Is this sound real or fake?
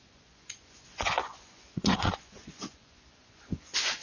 fake